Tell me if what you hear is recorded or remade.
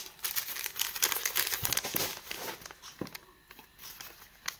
recorded